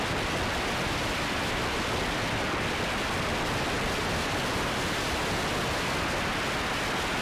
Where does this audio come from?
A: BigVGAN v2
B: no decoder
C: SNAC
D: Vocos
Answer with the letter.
B